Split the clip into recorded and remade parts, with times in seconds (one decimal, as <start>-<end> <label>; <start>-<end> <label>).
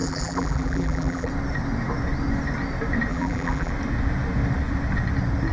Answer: 0.0-1.3 remade; 1.3-3.1 recorded; 3.1-3.7 remade; 3.7-5.5 recorded